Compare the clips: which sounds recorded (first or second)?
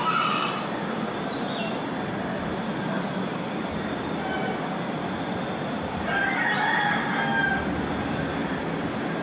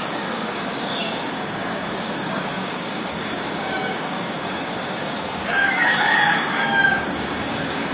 first